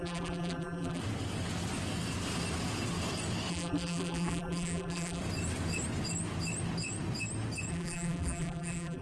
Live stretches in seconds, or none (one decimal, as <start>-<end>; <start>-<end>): 1.0-3.5; 5.2-7.7